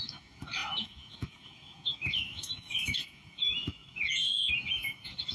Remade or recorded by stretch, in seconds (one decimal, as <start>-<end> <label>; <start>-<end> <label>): 0.0-5.3 remade